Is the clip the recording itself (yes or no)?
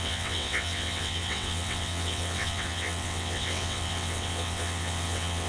no